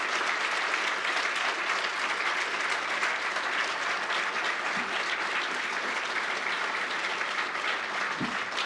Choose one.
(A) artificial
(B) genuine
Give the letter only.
B